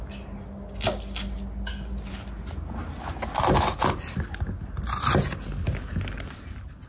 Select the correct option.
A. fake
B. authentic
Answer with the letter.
B